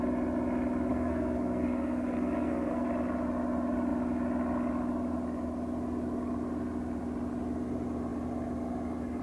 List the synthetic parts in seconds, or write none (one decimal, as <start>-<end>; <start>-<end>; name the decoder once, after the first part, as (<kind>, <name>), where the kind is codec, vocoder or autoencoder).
0.9-2.9 (codec, SNAC)